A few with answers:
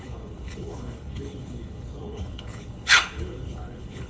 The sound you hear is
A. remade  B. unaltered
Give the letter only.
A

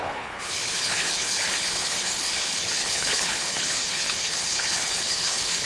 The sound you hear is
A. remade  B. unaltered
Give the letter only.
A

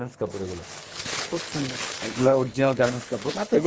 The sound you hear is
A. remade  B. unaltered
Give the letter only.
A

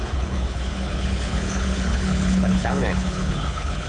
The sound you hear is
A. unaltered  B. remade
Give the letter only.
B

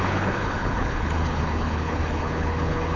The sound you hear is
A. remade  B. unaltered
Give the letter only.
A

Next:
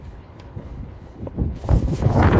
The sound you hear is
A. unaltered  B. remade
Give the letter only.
B